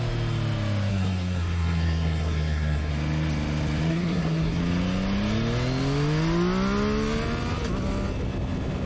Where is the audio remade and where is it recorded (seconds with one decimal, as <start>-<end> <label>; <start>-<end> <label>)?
0.0-0.9 recorded; 0.9-2.9 remade; 2.9-3.9 recorded; 3.9-4.6 remade; 4.6-8.9 recorded